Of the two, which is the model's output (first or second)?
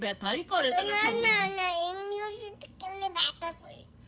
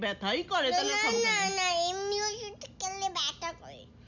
first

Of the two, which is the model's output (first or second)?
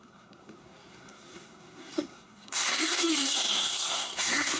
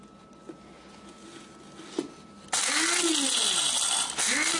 first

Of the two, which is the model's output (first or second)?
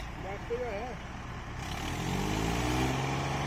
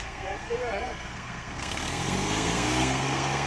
second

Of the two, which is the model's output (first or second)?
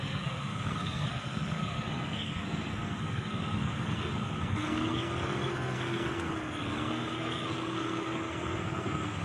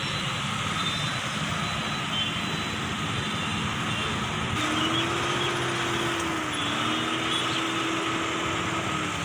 first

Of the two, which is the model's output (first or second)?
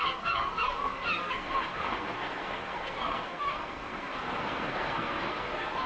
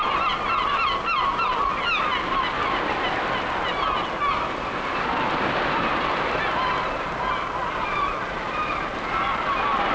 first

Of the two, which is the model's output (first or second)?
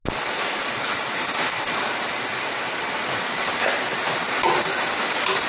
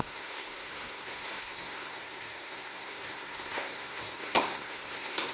second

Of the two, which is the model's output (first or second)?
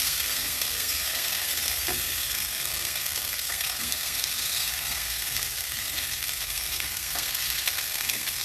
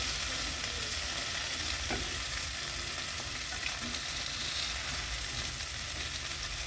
first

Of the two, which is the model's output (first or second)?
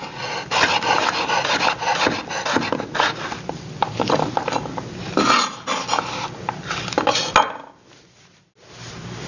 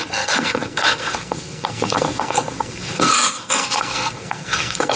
second